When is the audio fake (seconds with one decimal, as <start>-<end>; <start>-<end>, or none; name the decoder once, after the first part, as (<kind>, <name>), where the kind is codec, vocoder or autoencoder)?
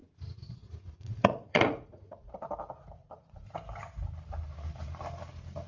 0.0-2.3 (vocoder, Vocos); 3.0-3.5